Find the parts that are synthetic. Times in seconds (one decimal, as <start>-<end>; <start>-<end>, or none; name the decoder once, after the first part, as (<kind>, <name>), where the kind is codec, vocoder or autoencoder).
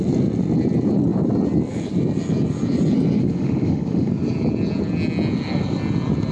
3.2-4.1 (autoencoder, DAC-VAE)